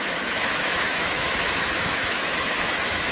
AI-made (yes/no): yes